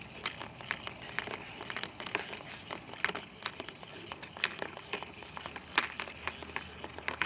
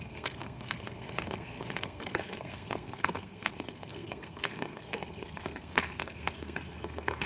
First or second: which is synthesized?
second